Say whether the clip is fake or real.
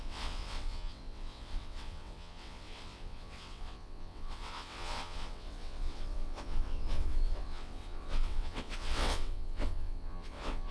fake